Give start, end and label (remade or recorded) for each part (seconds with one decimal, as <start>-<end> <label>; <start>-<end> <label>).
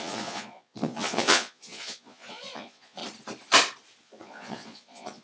0.0-3.0 remade; 3.0-4.0 recorded; 4.0-5.2 remade